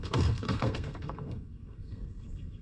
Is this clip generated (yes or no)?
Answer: yes